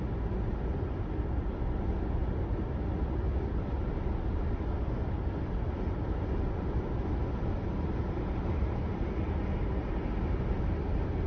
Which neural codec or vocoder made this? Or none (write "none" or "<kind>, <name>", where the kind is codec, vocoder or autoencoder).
none